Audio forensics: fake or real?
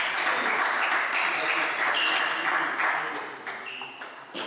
real